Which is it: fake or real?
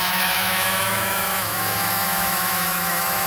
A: fake